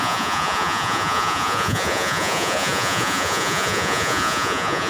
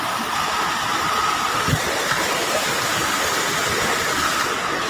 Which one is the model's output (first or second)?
first